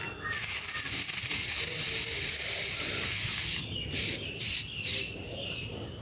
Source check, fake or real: real